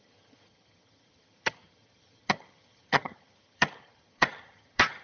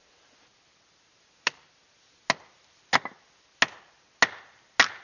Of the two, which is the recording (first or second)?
second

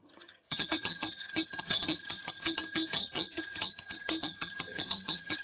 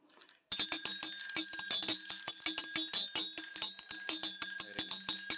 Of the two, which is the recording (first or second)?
second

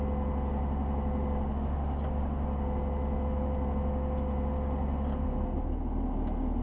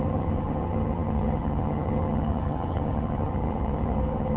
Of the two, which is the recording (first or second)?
first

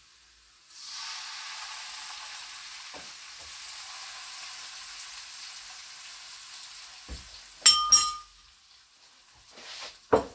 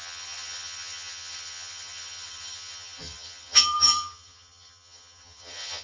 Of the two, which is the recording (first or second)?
first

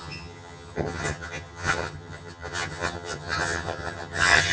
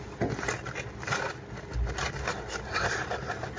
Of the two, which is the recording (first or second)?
second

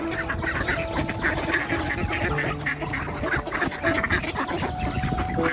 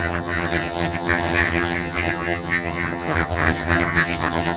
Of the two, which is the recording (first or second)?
first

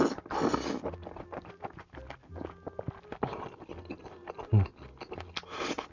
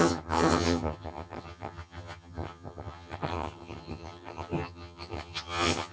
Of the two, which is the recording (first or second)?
first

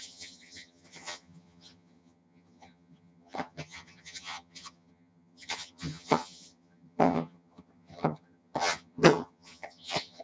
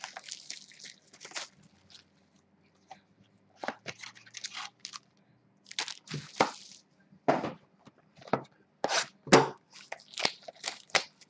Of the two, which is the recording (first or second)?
second